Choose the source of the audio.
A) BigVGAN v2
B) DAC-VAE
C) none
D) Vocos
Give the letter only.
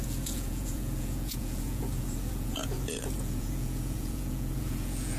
D